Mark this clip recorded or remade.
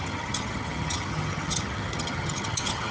remade